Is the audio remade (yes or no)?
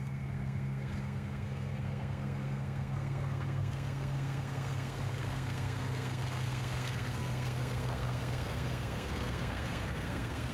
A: yes